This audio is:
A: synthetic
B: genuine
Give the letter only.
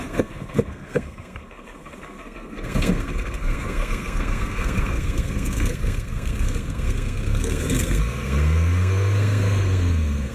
A